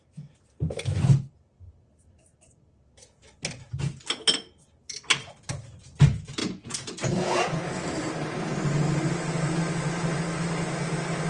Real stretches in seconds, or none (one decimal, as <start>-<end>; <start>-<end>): 0.0-6.4; 7.6-11.3